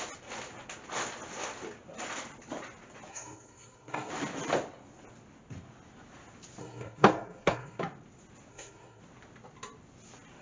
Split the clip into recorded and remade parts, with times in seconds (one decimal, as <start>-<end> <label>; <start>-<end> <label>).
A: 0.0-3.1 recorded; 3.1-4.1 remade; 4.1-6.6 recorded; 6.6-7.8 remade; 7.8-8.5 recorded; 8.5-9.0 remade; 9.0-10.4 recorded